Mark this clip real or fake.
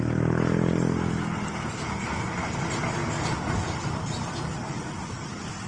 real